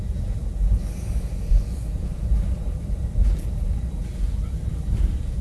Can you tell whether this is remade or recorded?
remade